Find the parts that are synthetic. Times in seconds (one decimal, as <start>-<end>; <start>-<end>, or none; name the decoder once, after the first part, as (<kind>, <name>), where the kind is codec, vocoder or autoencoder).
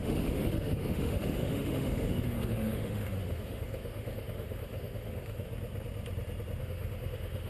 0.0-5.5 (autoencoder, DAC-VAE); 6.6-7.5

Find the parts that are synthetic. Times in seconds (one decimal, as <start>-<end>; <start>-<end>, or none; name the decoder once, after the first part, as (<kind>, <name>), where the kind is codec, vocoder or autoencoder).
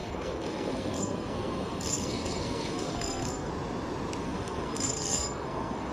0.0-3.5 (codec, SNAC); 4.2-5.9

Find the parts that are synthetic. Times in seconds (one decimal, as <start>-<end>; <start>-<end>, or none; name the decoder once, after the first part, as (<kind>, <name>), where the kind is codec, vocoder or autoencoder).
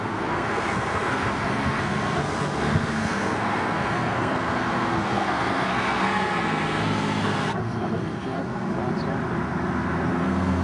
0.0-8.7 (codec, SNAC); 10.1-10.6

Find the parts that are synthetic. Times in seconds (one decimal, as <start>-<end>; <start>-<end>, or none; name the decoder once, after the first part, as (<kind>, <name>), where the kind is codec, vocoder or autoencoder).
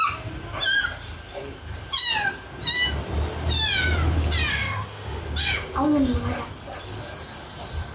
4.5-5.2 (autoencoder, DAC-VAE)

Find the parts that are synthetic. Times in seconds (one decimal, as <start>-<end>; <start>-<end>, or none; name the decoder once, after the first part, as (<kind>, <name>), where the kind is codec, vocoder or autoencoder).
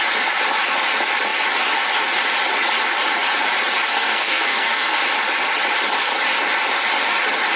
3.9-5.0 (codec, SNAC)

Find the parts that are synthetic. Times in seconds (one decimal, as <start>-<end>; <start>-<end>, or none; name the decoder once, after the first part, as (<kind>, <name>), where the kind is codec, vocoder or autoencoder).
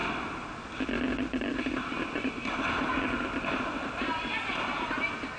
none